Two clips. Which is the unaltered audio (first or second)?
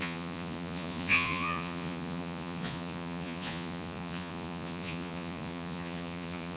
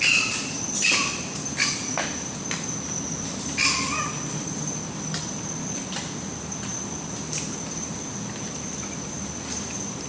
second